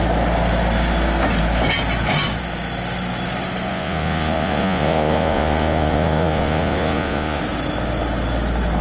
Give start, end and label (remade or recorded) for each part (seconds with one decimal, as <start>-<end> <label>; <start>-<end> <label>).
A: 0.0-3.7 recorded; 3.7-7.4 remade; 7.4-8.8 recorded